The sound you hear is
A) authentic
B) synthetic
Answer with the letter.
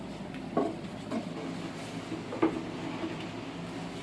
A